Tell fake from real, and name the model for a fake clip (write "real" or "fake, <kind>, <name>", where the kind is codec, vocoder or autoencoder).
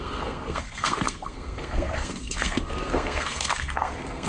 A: fake, codec, SNAC